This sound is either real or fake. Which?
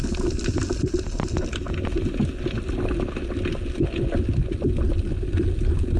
real